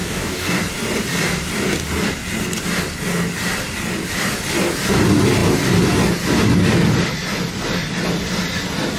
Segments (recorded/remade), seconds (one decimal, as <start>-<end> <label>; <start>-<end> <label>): 0.0-0.6 remade; 0.6-9.0 recorded